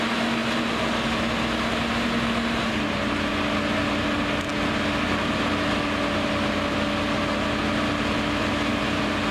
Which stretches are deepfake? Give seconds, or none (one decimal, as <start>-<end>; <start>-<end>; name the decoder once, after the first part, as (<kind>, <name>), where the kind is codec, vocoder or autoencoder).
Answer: none